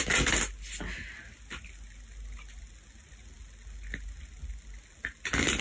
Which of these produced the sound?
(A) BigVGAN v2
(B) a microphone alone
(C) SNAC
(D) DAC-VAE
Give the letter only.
B